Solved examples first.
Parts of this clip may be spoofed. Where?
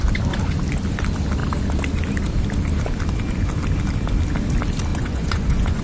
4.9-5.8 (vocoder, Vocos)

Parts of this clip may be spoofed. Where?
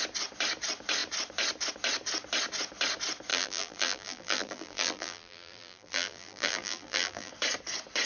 3.3-7.3 (vocoder, BigVGAN v2)